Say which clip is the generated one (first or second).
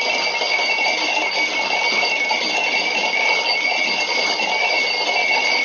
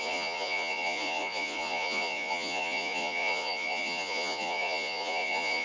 second